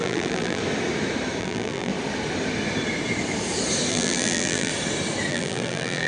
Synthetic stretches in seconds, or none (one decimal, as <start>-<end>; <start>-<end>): 0.0-0.6; 1.4-1.9; 3.9-4.7; 5.3-6.1